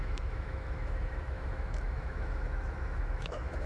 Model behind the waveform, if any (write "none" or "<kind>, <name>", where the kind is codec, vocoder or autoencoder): autoencoder, DAC-VAE